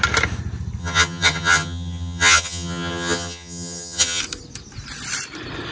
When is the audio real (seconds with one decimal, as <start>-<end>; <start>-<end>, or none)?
0.0-0.8; 4.2-5.7